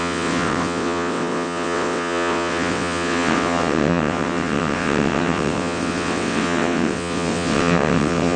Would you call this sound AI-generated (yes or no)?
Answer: yes